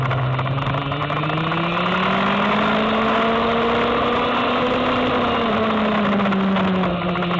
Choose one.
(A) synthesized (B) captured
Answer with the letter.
B